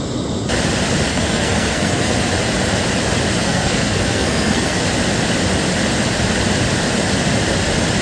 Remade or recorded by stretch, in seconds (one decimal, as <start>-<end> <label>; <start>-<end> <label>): 0.0-1.1 recorded; 1.1-2.1 remade; 2.1-3.4 recorded; 3.4-4.8 remade; 4.8-8.0 recorded